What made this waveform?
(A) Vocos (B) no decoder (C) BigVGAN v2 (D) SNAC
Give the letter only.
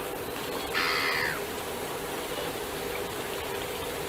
B